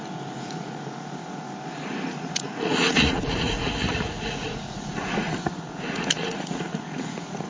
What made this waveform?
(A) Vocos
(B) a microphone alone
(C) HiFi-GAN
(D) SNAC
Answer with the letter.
A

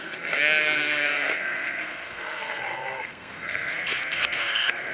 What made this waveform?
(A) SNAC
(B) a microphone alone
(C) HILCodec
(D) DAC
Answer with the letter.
A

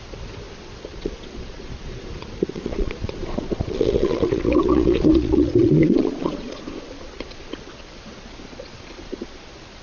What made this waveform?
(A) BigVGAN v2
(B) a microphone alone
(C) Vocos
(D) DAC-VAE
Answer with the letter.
C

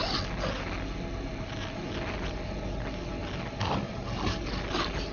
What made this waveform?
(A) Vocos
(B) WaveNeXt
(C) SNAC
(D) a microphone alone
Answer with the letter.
D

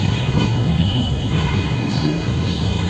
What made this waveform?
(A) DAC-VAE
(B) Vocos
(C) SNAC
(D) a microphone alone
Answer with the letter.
C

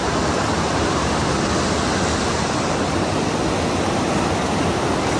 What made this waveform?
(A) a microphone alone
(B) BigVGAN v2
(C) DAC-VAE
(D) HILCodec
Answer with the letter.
A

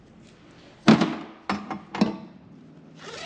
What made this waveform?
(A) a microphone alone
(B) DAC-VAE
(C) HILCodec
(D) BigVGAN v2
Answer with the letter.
A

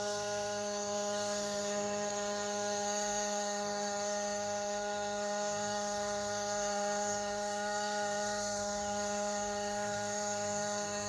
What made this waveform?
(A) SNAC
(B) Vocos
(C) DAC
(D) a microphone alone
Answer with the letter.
A